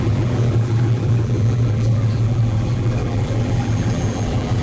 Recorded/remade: remade